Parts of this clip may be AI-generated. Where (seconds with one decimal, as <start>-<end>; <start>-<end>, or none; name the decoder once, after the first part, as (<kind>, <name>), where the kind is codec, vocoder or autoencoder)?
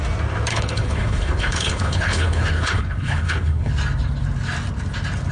0.5-3.7 (codec, HILCodec)